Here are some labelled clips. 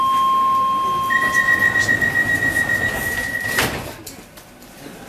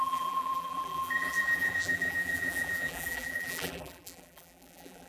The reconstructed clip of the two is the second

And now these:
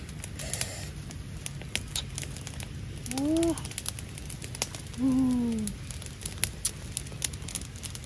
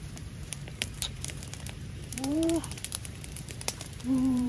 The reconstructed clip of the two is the second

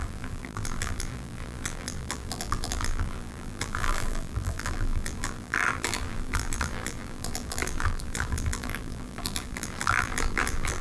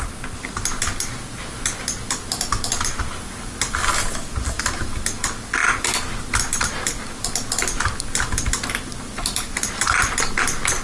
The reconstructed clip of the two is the first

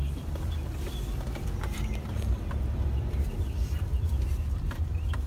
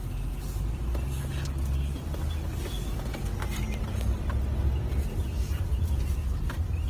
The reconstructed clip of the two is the first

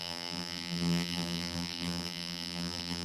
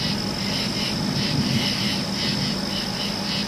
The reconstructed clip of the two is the first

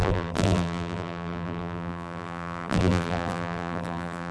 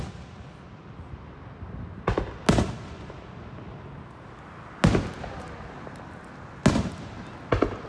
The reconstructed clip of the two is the first